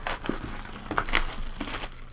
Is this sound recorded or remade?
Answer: recorded